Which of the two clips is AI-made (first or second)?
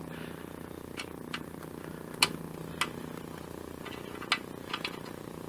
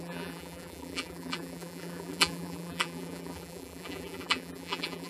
second